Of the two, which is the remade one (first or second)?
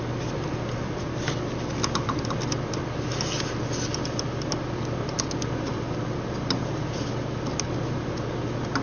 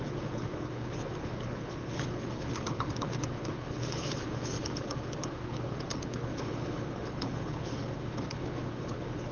second